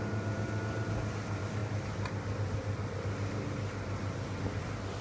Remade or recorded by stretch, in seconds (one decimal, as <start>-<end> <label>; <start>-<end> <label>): 0.0-5.0 recorded